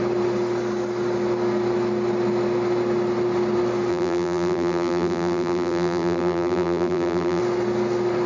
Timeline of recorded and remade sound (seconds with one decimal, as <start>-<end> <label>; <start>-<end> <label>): 0.0-3.9 recorded; 3.9-7.4 remade; 7.4-8.3 recorded